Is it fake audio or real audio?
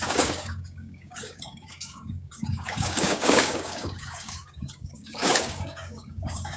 fake